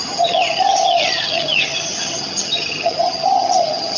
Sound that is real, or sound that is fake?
fake